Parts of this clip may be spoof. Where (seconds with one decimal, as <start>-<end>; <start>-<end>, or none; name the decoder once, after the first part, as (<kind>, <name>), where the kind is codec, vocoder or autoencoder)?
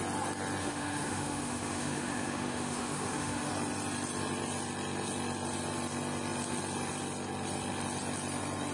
0.6-3.5 (autoencoder, DAC-VAE)